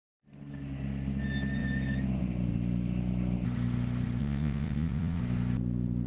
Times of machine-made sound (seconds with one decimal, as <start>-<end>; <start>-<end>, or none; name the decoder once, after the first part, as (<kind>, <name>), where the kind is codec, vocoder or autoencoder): 4.2-5.2 (vocoder, Vocos)